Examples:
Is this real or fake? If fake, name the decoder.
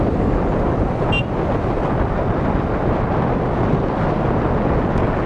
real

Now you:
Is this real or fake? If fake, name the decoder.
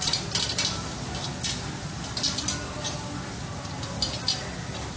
real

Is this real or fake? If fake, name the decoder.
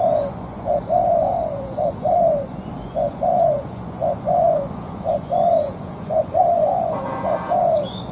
fake, vocoder, Vocos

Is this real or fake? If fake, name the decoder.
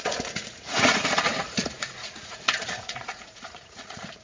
fake, vocoder, Vocos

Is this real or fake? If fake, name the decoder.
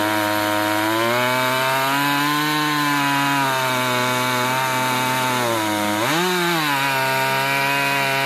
real